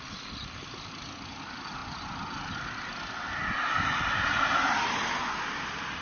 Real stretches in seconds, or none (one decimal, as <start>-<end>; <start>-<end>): 0.0-6.0